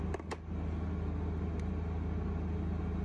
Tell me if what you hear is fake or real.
real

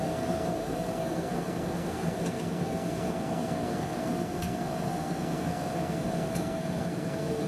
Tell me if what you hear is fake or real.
fake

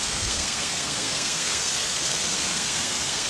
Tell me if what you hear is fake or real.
fake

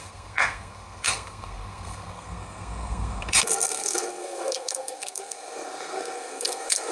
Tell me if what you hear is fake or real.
fake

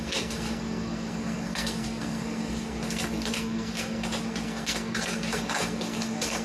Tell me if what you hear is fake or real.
fake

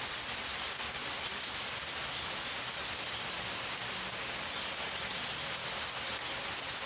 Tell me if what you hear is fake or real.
real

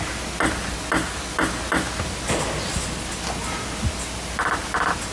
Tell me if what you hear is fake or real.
real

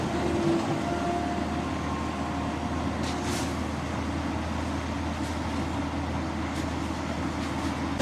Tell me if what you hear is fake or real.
real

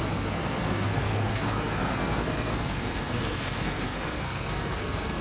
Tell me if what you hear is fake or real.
fake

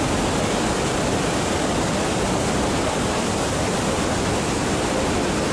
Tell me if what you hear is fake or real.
real